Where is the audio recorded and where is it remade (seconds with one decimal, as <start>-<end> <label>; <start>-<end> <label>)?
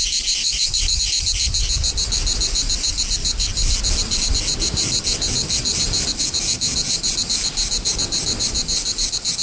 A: 0.0-0.4 recorded; 0.4-1.0 remade; 1.0-9.4 recorded